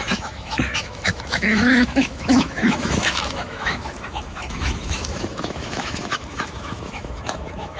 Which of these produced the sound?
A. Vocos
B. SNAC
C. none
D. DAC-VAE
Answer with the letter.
D